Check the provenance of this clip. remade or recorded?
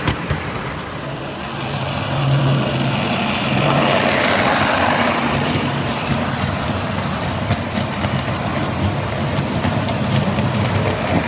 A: recorded